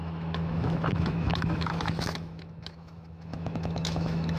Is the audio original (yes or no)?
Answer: no